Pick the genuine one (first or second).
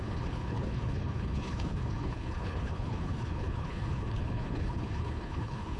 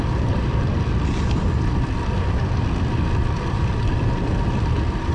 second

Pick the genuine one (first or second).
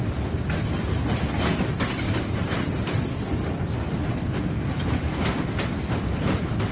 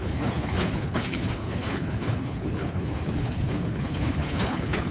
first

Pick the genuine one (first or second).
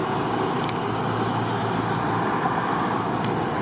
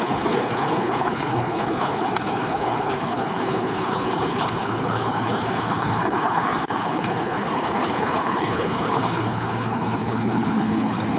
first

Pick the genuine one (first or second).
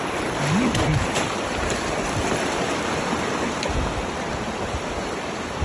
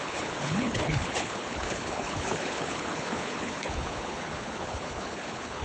first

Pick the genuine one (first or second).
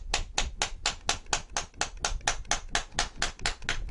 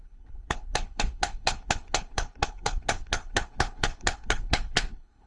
first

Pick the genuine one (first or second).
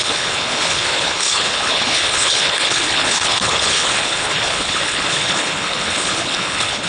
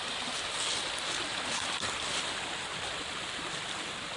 second